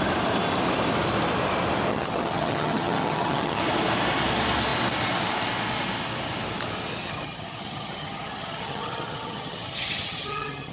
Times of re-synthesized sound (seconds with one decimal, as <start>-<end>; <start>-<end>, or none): 1.9-3.6; 7.0-10.7